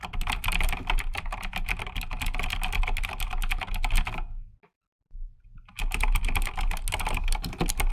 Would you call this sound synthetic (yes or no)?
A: no